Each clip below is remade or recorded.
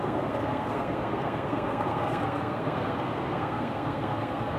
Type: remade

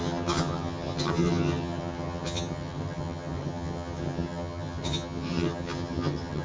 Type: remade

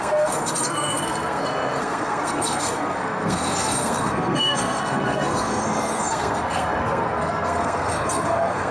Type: remade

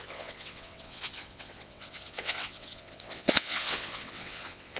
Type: remade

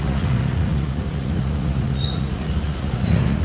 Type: remade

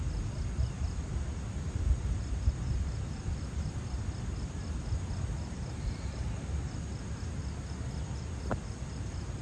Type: recorded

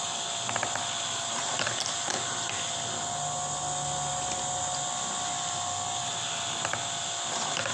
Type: recorded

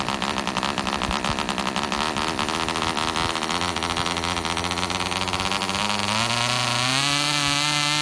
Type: recorded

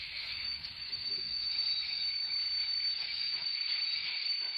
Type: remade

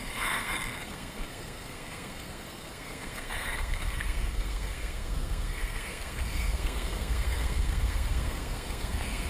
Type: remade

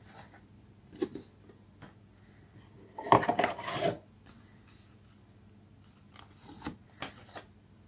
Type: recorded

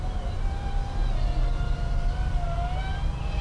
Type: recorded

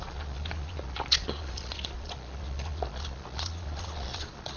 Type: remade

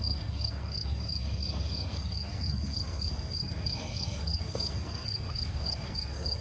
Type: remade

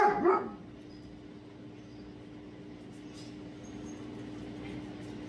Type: recorded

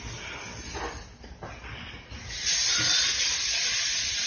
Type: recorded